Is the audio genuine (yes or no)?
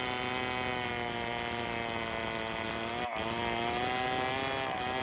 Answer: yes